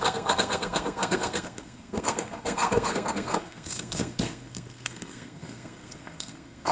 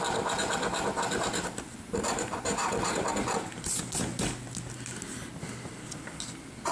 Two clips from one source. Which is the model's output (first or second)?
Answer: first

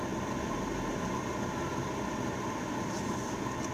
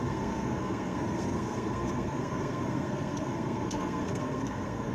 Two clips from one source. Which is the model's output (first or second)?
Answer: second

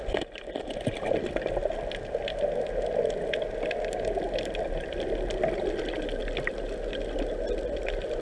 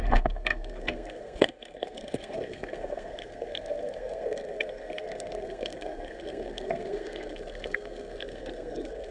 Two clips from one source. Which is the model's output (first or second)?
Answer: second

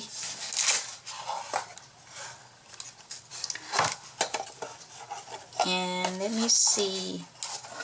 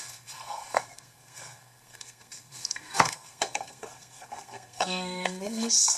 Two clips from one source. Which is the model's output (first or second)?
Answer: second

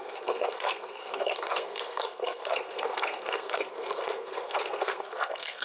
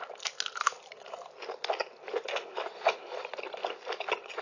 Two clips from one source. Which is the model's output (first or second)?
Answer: first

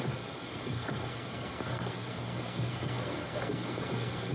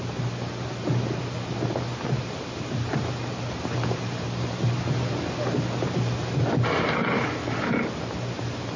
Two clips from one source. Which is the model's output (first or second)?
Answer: first